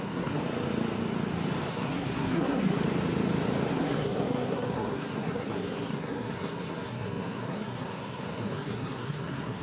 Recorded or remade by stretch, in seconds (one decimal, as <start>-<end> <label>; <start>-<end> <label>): 0.0-0.4 remade; 0.4-1.7 recorded; 1.7-2.8 remade; 2.8-3.7 recorded; 3.7-9.6 remade